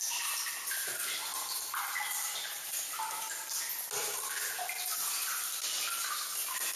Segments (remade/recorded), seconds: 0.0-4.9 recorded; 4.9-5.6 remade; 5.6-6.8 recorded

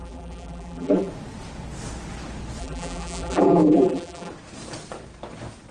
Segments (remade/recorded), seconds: 0.0-1.1 remade; 1.1-2.6 recorded; 2.6-4.3 remade; 4.3-5.7 recorded

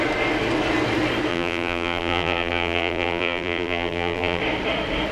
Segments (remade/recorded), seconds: 0.0-1.3 recorded; 1.3-4.4 remade; 4.4-5.1 recorded

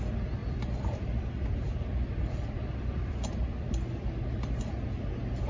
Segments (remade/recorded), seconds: 0.0-0.4 recorded; 0.4-3.7 remade; 3.7-5.5 recorded

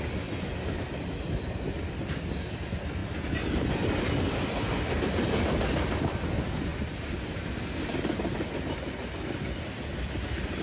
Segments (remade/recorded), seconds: 0.0-10.6 recorded